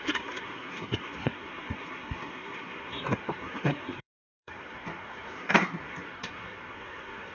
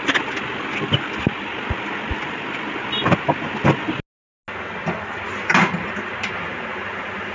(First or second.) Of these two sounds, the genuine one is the second